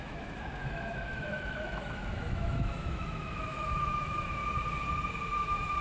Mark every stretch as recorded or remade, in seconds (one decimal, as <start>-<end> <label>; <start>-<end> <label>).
0.0-4.4 remade; 4.4-5.3 recorded; 5.3-5.8 remade